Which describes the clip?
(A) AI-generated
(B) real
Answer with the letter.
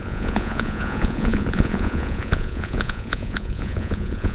A